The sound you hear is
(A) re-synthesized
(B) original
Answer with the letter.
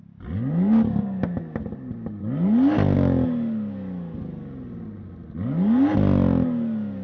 B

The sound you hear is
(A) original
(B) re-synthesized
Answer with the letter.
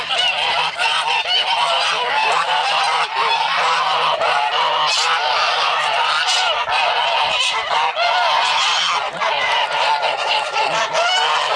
A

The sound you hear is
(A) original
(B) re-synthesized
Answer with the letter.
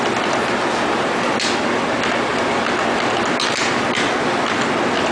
A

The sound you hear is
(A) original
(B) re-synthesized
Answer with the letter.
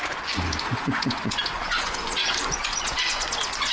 B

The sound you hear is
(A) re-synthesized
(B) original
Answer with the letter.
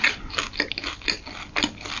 B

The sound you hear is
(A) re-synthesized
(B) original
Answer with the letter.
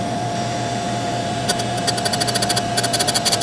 B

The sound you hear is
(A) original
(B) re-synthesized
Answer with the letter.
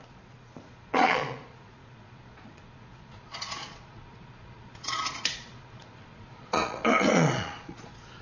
B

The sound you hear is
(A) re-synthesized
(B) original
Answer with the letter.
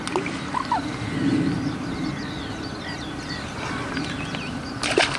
B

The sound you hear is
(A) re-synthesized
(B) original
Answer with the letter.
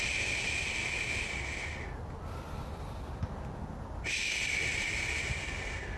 B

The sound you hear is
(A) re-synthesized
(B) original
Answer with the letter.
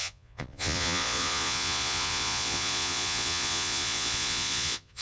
A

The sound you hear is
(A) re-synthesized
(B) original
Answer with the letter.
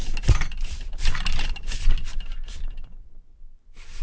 B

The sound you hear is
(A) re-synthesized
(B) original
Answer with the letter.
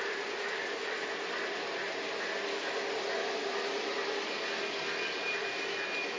B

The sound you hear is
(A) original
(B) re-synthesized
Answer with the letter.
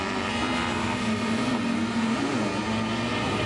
A